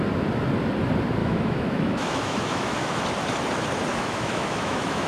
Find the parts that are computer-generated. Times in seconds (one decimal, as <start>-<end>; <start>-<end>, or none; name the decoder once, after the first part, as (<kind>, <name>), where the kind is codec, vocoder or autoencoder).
1.2-3.0 (autoencoder, DAC-VAE); 3.9-5.1